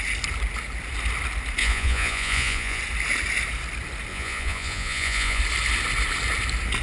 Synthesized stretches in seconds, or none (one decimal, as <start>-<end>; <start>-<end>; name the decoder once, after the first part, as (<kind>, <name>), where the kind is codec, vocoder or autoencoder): 1.6-2.8 (vocoder, Vocos); 4.1-5.4